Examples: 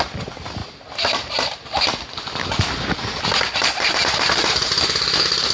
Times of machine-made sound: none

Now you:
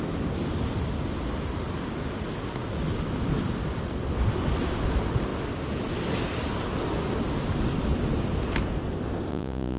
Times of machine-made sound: 9.3-9.8